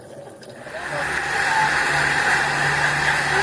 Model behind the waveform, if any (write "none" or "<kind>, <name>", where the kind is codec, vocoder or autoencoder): none